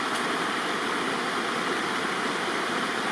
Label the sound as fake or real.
real